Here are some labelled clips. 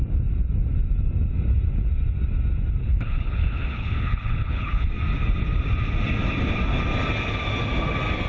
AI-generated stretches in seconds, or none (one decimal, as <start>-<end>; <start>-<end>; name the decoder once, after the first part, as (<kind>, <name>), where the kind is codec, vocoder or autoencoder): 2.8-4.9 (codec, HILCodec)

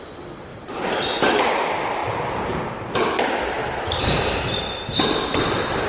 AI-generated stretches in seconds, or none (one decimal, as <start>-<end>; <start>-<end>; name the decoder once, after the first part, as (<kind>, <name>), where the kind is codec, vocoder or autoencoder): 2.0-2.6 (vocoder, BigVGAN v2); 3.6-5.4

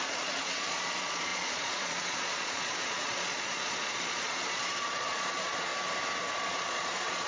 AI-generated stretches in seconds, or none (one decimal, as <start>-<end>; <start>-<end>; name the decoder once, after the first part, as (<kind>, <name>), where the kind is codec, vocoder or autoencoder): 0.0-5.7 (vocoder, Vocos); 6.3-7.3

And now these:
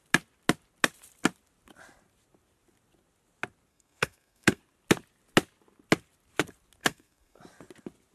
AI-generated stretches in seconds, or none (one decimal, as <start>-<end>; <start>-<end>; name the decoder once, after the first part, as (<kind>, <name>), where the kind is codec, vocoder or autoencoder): 3.7-4.6 (codec, SNAC); 6.8-7.4